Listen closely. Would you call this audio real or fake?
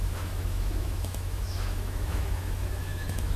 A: fake